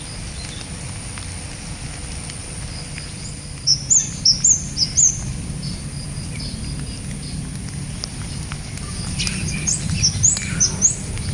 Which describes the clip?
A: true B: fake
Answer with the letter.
A